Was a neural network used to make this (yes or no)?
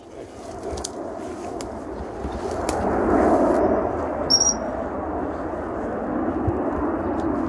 no